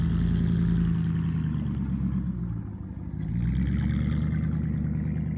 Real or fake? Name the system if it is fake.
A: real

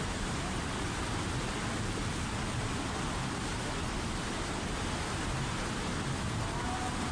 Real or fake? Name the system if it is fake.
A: real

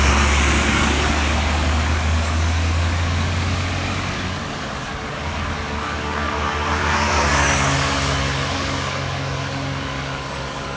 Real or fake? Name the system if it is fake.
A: fake, codec, DAC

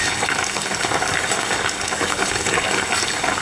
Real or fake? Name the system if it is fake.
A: fake, codec, DAC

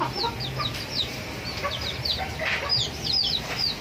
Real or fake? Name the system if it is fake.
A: real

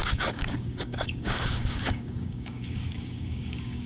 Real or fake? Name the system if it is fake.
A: fake, codec, DAC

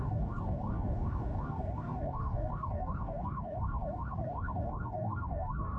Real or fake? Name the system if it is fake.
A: fake, codec, DAC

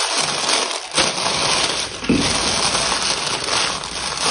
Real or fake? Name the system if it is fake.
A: real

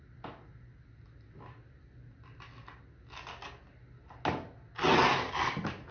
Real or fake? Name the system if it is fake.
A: real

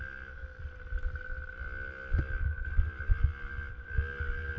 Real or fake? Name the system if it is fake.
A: real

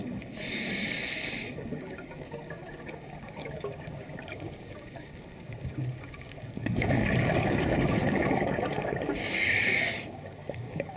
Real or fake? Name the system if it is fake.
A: fake, codec, DAC